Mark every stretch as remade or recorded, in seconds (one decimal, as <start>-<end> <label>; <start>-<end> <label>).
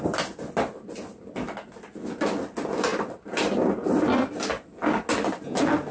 0.0-5.9 recorded